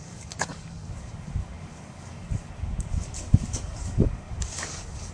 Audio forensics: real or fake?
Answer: fake